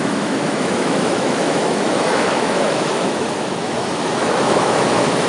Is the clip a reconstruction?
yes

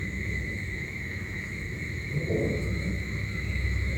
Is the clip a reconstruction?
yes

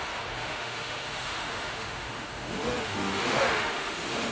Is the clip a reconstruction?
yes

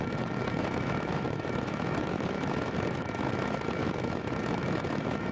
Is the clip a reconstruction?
yes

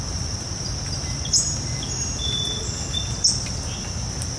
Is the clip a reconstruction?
no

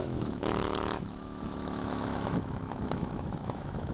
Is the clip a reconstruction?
yes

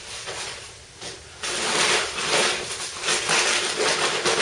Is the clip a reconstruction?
no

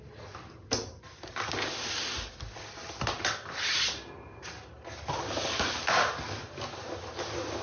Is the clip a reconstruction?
no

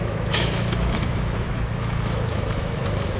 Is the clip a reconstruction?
yes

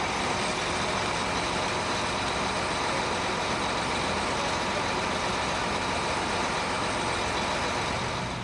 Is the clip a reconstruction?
no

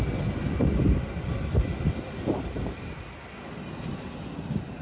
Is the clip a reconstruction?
no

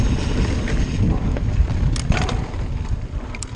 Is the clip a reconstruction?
no